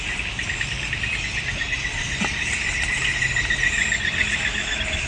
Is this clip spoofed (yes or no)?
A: no